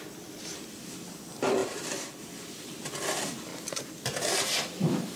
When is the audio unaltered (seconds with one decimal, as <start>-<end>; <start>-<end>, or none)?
3.5-4.0